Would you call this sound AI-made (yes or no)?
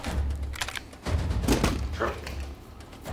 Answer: no